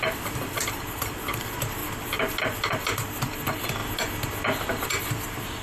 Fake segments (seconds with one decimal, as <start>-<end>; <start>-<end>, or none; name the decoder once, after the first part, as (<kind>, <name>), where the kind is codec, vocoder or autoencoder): 0.0-1.8 (vocoder, BigVGAN v2); 2.4-3.8; 4.9-5.6